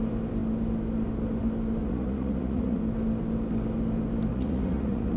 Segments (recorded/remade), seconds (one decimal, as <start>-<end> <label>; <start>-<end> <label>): 0.0-1.8 recorded; 1.8-2.8 remade; 2.8-4.3 recorded; 4.3-5.2 remade